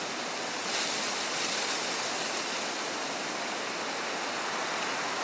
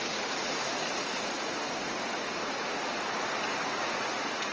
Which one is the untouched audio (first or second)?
first